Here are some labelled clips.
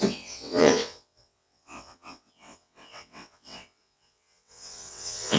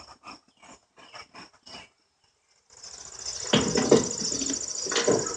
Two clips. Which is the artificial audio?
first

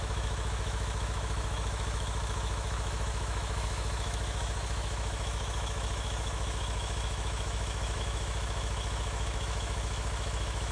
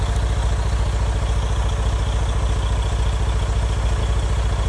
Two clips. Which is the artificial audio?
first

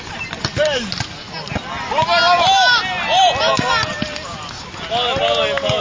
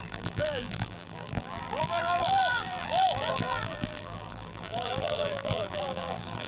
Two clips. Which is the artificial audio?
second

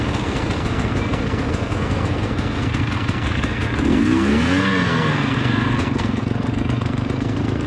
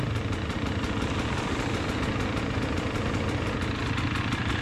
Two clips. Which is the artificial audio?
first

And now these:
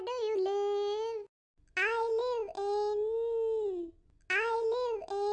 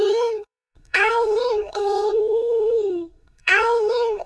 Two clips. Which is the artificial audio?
second